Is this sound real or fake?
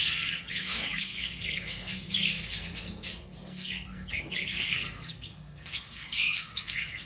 fake